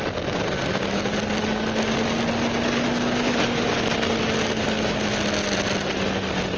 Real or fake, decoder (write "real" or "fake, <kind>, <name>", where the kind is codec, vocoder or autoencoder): real